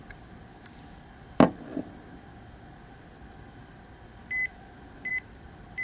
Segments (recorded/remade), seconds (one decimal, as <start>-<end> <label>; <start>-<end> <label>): 0.0-5.8 recorded

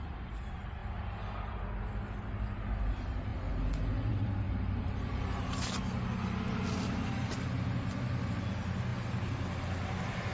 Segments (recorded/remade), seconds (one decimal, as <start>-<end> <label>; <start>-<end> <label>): 0.0-10.3 recorded

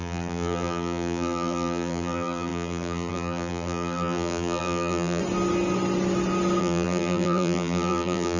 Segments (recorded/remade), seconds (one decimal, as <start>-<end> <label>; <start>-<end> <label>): 0.0-5.2 remade; 5.2-6.6 recorded; 6.6-8.4 remade

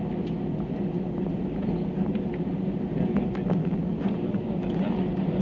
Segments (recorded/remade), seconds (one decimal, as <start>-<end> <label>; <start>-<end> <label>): 0.0-3.6 recorded; 3.6-4.6 remade; 4.6-5.4 recorded

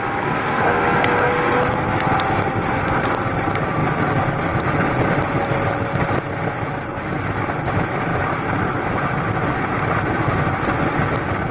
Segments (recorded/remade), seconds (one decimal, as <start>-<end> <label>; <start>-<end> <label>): 0.0-8.1 recorded; 8.1-9.8 remade; 9.8-11.5 recorded

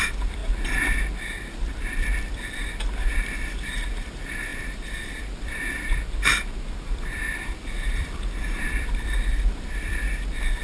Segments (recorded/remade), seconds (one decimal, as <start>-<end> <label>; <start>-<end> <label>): 0.0-0.4 remade; 0.4-1.5 recorded; 1.5-10.6 remade